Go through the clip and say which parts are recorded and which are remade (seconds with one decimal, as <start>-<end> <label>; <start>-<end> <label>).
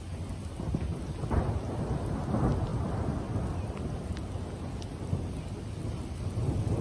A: 0.0-6.8 recorded